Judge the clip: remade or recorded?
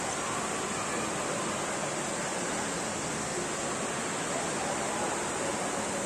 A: recorded